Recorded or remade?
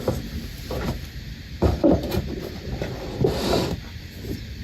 recorded